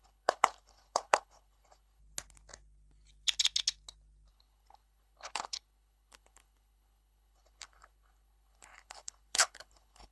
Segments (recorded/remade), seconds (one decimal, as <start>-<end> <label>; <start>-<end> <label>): 0.0-2.0 remade; 2.0-4.3 recorded; 4.3-10.1 remade